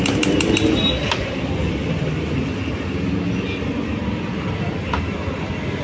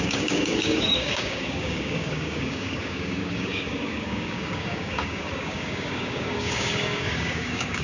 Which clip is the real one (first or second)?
first